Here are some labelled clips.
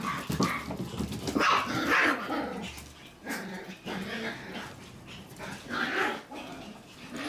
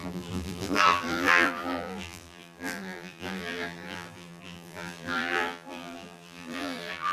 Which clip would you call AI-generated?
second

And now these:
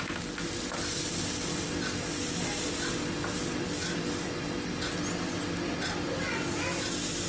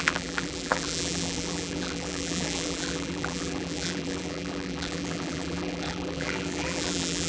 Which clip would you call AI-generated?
second